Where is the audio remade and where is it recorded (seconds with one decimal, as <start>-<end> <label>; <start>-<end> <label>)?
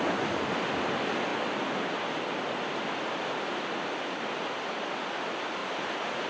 0.0-5.6 recorded; 5.6-6.3 remade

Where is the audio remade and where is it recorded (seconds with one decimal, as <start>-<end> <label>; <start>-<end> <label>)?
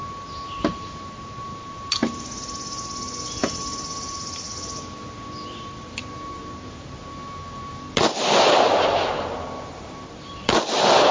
0.0-11.1 recorded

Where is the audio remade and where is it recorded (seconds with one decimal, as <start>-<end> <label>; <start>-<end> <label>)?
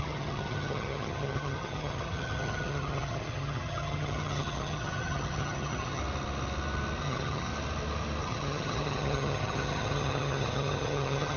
0.0-6.0 remade; 6.0-7.0 recorded; 7.0-7.5 remade; 7.5-8.2 recorded; 8.2-11.4 remade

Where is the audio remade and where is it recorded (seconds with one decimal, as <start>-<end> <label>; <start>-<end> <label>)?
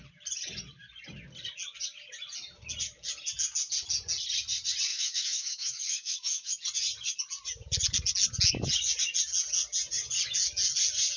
0.0-4.9 recorded; 4.9-6.6 remade; 6.6-11.2 recorded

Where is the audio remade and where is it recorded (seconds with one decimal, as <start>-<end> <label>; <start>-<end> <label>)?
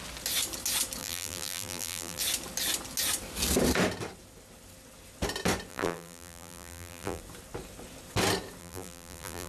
0.0-1.0 recorded; 1.0-2.2 remade; 2.2-5.7 recorded; 5.7-7.2 remade; 7.2-8.6 recorded; 8.6-9.5 remade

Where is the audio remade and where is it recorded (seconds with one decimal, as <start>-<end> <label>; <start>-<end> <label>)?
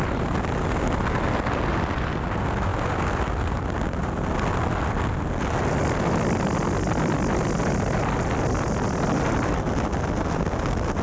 0.0-11.0 recorded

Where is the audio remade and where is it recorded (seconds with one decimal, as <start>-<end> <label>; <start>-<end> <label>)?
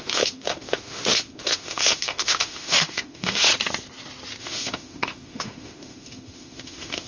0.0-3.5 remade; 3.5-4.4 recorded; 4.4-7.1 remade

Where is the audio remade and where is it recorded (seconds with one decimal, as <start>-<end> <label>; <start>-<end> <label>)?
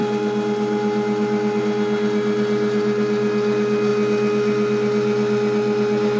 0.0-6.2 recorded